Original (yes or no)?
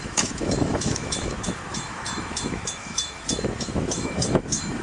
no